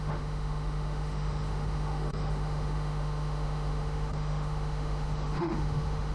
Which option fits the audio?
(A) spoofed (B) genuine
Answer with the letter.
A